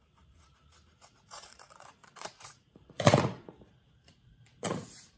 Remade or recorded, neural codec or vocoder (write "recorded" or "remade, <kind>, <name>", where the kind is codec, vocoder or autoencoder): remade, vocoder, Vocos